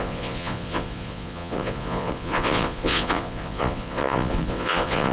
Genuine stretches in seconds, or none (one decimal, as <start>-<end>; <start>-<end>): none